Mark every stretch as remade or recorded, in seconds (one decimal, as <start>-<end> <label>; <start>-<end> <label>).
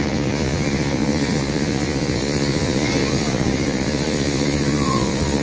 0.0-5.4 remade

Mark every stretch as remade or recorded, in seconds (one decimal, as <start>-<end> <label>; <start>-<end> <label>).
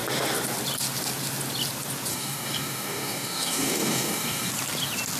0.0-2.1 recorded; 2.1-4.5 remade; 4.5-5.2 recorded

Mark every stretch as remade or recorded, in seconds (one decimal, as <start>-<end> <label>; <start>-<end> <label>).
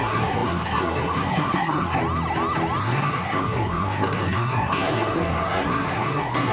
0.0-2.0 remade; 2.0-2.8 recorded; 2.8-6.5 remade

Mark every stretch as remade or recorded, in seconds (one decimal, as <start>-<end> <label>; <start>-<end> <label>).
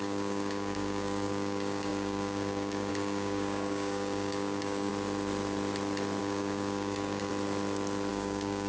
0.0-4.9 remade; 4.9-6.2 recorded; 6.2-7.3 remade; 7.3-8.1 recorded; 8.1-8.7 remade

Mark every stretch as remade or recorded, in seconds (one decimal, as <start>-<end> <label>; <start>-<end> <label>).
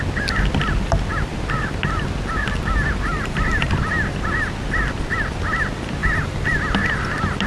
0.0-3.1 recorded; 3.1-3.7 remade; 3.7-6.0 recorded; 6.0-6.6 remade; 6.6-7.5 recorded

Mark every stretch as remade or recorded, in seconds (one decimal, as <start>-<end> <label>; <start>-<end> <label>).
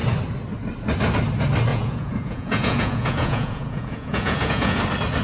0.0-1.7 recorded; 1.7-4.8 remade; 4.8-5.2 recorded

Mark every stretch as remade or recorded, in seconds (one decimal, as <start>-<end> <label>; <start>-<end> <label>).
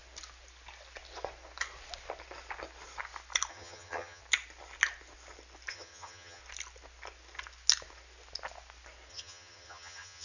0.0-3.5 recorded; 3.5-4.2 remade; 4.2-5.7 recorded; 5.7-6.4 remade; 6.4-9.1 recorded; 9.1-10.2 remade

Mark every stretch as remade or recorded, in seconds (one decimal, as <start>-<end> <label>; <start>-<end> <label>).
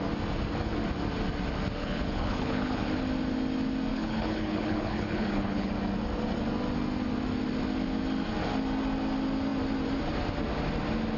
0.0-1.8 recorded; 1.8-3.0 remade; 3.0-3.9 recorded; 3.9-5.7 remade; 5.7-11.2 recorded